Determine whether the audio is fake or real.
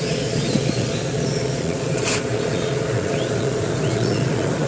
fake